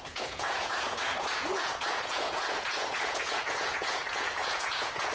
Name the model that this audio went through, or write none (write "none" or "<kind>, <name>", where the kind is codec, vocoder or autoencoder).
vocoder, Vocos